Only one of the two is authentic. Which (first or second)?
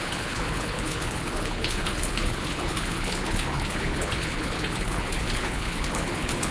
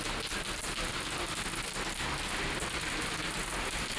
second